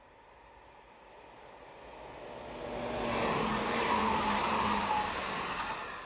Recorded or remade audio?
recorded